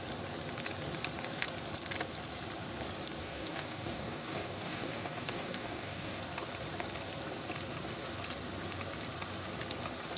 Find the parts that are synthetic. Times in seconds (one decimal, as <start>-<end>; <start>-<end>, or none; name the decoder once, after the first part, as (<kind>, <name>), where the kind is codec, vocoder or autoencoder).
3.2-6.2 (codec, DAC)